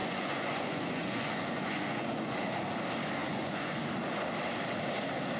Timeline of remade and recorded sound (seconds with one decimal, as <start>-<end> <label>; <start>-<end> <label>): 0.0-2.5 remade; 2.5-3.2 recorded; 3.2-3.9 remade; 3.9-5.4 recorded